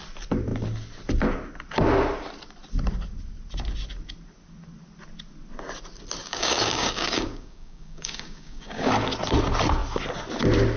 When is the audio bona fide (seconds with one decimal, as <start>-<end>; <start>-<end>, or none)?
0.0-6.2; 8.9-10.8